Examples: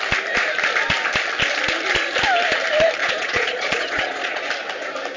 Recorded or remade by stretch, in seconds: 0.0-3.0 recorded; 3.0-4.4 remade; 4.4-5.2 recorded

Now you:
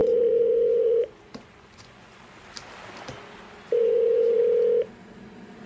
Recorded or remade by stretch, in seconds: 0.0-2.2 remade; 2.2-3.8 recorded; 3.8-4.4 remade; 4.4-5.7 recorded

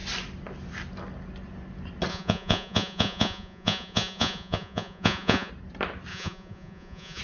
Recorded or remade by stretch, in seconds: 0.0-2.1 recorded; 2.1-5.5 remade; 5.5-6.1 recorded; 6.1-7.2 remade

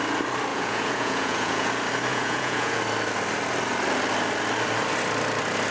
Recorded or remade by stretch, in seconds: 0.0-0.5 recorded; 0.5-1.7 remade; 1.7-2.1 recorded; 2.1-2.8 remade; 2.8-5.7 recorded

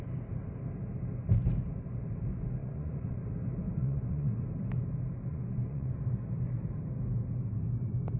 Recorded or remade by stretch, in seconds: 0.0-2.6 recorded; 2.6-3.2 remade; 3.2-3.8 recorded; 3.8-4.3 remade; 4.3-5.3 recorded; 5.3-6.0 remade; 6.0-8.2 recorded

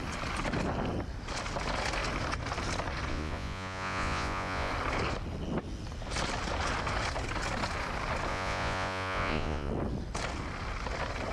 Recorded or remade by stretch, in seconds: 0.0-3.1 recorded; 3.1-4.7 remade; 4.7-8.3 recorded; 8.3-9.7 remade; 9.7-11.3 recorded